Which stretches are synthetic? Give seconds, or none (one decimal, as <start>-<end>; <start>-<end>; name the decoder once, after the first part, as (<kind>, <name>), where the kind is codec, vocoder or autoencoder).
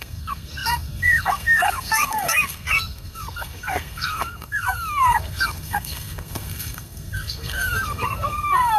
0.0-8.8 (codec, SNAC)